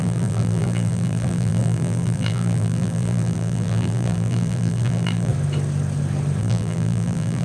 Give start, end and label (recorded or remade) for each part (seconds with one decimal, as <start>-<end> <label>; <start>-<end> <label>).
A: 0.0-5.3 remade; 5.3-6.4 recorded; 6.4-7.4 remade